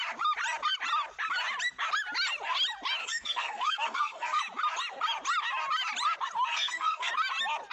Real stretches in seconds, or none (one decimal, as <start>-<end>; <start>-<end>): 0.0-3.0; 4.4-6.5; 7.1-7.7